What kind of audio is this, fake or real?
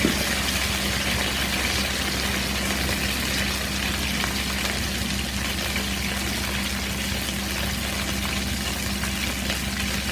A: real